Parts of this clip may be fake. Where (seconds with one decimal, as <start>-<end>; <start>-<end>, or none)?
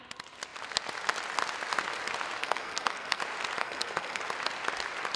2.4-3.2; 3.6-4.2